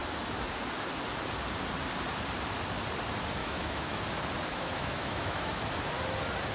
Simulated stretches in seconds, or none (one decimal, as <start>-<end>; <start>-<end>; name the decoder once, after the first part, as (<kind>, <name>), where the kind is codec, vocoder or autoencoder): 3.4-4.0 (autoencoder, DAC-VAE); 4.5-5.6